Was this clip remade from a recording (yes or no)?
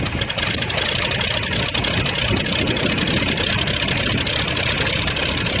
no